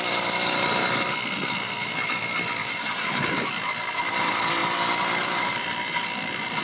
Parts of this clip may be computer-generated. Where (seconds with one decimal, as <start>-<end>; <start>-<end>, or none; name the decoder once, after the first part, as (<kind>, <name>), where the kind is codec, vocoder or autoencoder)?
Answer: 2.6-3.5 (vocoder, BigVGAN v2)